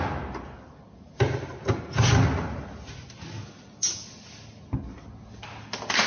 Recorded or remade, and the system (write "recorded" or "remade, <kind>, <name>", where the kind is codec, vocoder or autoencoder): recorded